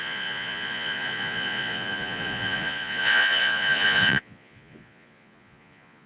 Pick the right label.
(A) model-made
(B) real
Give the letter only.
A